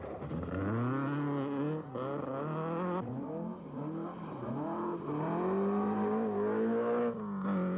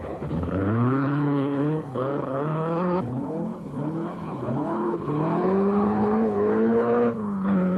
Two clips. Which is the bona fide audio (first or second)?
first